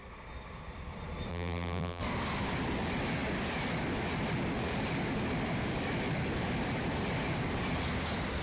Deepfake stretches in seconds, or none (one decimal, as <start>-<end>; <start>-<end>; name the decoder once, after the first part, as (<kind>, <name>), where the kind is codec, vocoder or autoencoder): 1.3-2.0 (vocoder, BigVGAN v2)